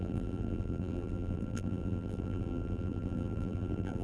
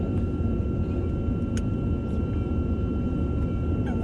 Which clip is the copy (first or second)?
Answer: first